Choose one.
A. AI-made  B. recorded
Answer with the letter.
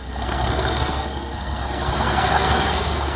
A